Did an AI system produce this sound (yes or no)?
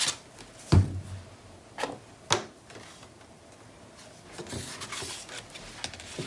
no